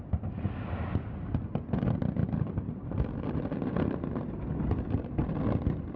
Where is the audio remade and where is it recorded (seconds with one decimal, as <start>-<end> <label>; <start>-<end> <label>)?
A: 0.0-6.0 recorded